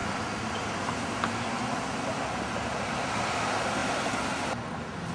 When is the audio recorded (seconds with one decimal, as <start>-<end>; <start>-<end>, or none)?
0.0-5.1